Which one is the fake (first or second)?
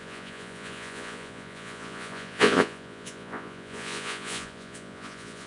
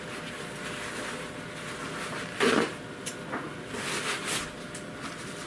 first